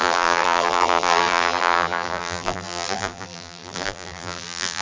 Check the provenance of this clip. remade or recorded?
remade